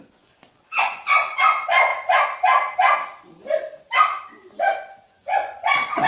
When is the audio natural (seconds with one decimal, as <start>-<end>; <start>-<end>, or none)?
1.9-4.6